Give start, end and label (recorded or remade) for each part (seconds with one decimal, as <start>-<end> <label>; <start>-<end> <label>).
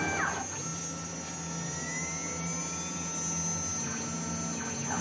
0.0-5.0 recorded